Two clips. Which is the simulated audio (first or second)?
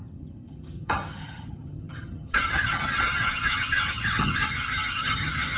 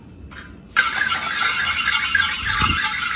first